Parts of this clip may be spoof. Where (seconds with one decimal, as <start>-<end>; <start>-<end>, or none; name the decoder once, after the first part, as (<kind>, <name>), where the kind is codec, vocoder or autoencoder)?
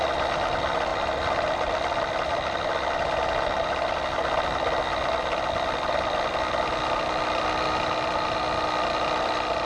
0.9-2.9 (vocoder, BigVGAN v2)